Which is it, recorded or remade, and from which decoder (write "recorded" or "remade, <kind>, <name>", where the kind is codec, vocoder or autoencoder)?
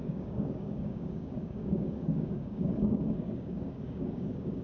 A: remade, codec, DAC